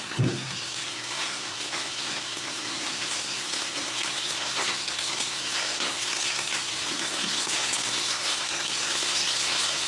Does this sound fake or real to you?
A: fake